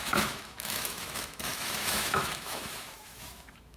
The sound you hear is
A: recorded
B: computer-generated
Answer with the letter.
B